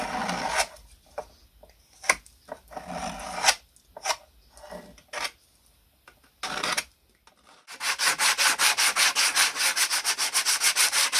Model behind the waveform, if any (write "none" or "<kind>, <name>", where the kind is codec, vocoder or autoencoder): none